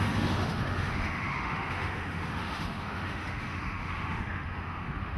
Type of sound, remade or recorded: remade